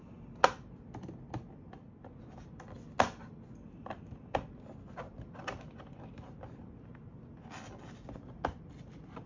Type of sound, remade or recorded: recorded